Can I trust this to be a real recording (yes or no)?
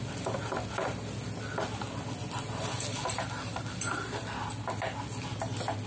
yes